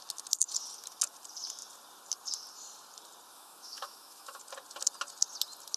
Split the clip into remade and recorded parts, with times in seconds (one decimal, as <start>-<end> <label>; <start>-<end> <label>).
0.0-3.3 recorded; 3.3-4.4 remade; 4.4-5.8 recorded